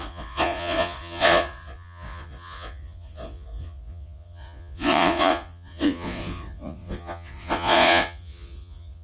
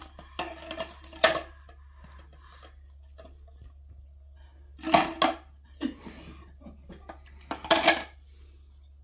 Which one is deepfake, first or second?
first